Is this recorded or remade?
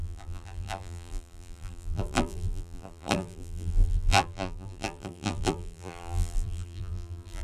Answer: remade